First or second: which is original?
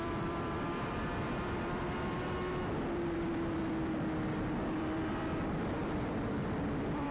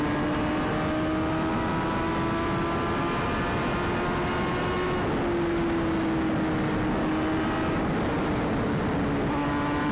second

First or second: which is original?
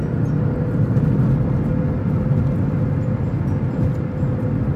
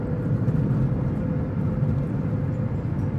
first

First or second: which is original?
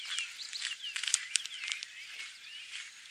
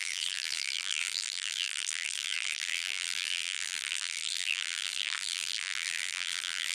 first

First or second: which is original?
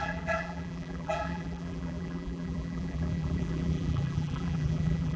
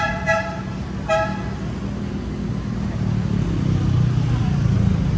second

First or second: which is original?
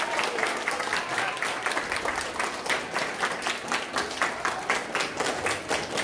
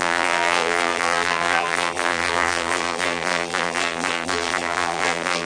first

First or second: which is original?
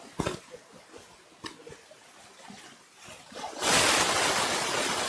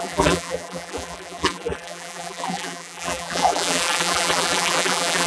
first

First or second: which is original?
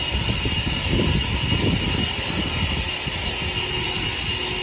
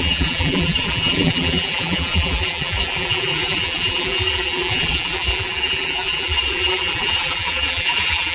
first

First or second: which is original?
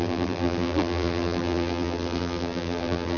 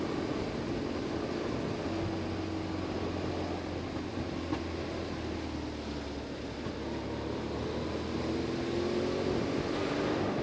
second